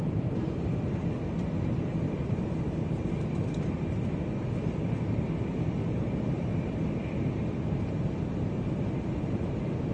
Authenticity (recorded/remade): recorded